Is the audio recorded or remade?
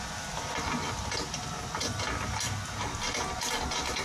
recorded